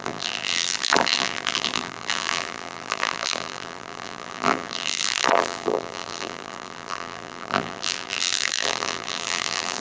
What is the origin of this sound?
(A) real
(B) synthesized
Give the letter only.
B